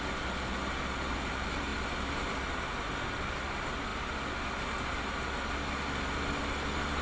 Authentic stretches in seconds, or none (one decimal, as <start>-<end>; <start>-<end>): 0.0-7.0